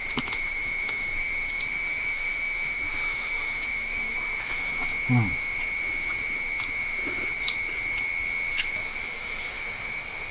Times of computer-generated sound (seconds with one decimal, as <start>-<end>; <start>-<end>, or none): 0.0-4.7; 8.5-9.6